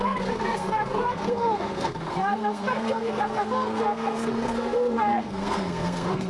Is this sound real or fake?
fake